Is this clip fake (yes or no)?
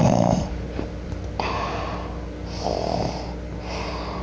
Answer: no